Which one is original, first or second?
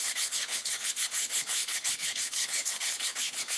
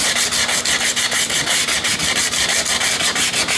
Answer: second